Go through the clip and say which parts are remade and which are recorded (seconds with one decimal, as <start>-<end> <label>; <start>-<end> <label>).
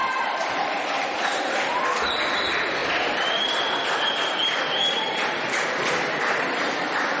0.0-1.8 remade; 1.8-2.8 recorded; 2.8-4.1 remade; 4.1-7.2 recorded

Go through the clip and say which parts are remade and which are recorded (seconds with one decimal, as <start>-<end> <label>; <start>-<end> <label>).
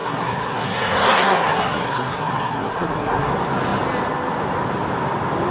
0.0-3.3 remade; 3.3-5.5 recorded